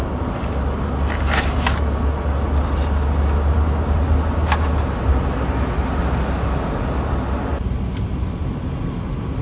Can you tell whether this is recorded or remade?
recorded